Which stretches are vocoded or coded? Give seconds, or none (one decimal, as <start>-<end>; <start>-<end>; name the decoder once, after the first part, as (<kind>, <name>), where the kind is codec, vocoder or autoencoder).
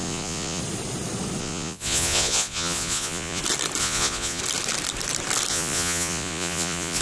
0.0-0.6 (vocoder, Vocos); 1.4-3.4; 3.8-4.4; 5.5-7.0